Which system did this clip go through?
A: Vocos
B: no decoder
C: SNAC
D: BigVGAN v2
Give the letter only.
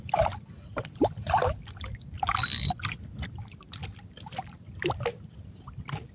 B